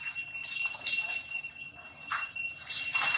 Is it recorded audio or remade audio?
recorded